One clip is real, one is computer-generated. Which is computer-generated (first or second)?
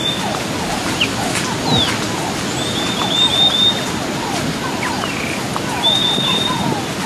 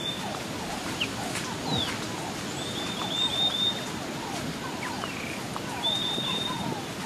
second